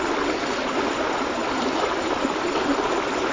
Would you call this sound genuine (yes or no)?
yes